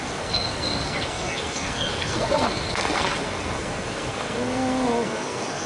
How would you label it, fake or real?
fake